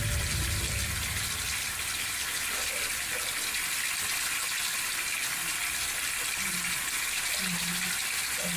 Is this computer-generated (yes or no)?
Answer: no